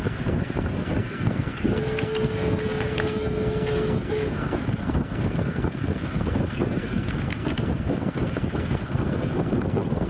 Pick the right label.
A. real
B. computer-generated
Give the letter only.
B